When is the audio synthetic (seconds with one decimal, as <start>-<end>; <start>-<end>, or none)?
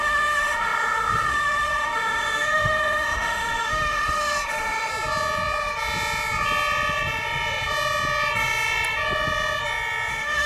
0.0-4.9; 10.1-10.5